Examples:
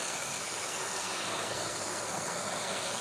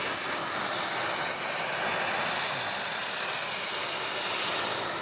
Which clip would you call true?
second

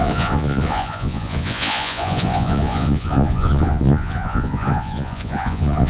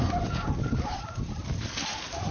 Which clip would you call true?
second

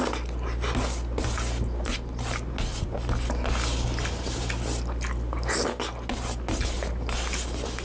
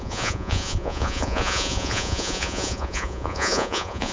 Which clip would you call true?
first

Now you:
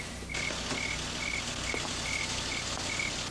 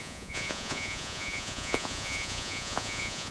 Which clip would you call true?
first